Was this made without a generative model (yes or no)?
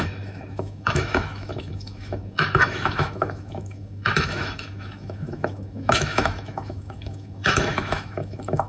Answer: no